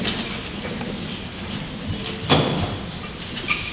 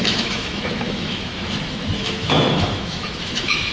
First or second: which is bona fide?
first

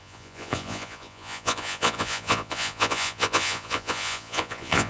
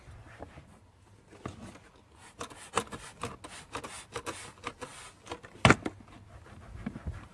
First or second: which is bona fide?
second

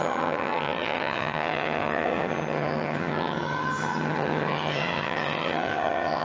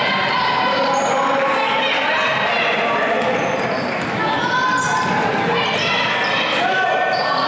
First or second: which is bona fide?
second